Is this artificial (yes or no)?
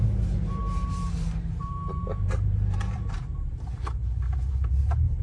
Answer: yes